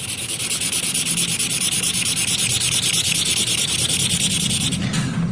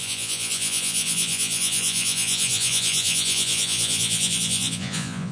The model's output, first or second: second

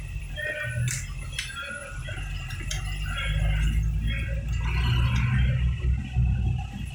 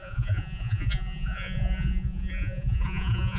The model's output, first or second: second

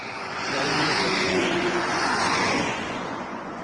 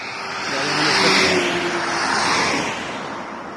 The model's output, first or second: first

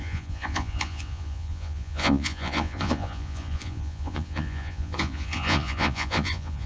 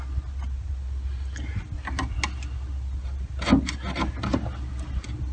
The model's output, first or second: first